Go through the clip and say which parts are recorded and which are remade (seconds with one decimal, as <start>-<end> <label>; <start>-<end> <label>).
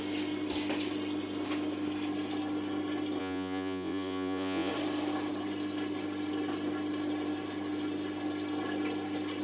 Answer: 0.0-3.2 recorded; 3.2-4.7 remade; 4.7-9.4 recorded